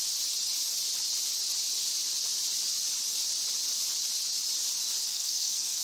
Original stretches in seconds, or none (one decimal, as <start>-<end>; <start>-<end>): 0.0-5.1